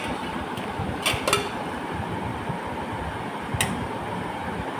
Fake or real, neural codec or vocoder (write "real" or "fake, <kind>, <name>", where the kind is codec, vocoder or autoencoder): real